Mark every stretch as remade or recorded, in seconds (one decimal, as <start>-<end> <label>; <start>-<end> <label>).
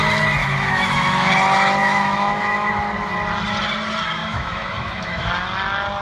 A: 0.0-0.4 recorded; 0.4-1.3 remade; 1.3-1.8 recorded; 1.8-2.7 remade; 2.7-4.2 recorded; 4.2-5.3 remade; 5.3-6.0 recorded